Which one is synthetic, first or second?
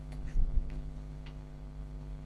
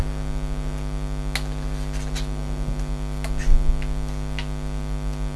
first